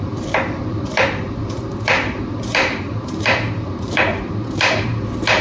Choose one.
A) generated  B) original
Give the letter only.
A